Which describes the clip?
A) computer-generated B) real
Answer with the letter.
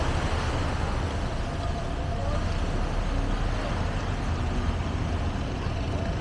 B